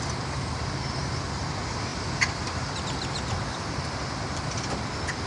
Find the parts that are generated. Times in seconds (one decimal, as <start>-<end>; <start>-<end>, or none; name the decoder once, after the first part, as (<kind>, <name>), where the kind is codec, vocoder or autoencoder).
none